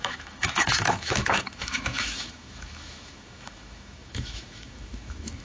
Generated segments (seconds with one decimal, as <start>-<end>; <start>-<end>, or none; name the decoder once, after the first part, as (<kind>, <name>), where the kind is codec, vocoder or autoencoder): 0.0-5.4 (autoencoder, DAC-VAE)